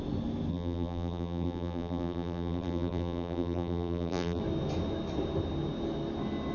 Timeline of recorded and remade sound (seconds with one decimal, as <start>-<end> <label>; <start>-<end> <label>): 0.0-0.5 recorded; 0.5-4.4 remade; 4.4-6.5 recorded